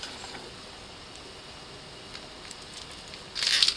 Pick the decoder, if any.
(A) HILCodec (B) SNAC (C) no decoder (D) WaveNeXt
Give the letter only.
C